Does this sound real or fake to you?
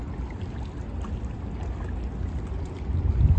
real